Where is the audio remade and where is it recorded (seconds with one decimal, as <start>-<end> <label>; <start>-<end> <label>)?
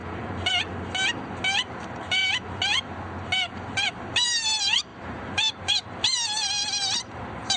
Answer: 0.0-0.5 remade; 0.5-2.2 recorded; 2.2-3.0 remade; 3.0-4.9 recorded; 4.9-7.6 remade